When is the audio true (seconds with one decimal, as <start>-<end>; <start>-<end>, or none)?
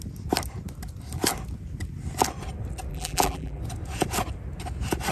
0.0-2.9; 3.6-5.1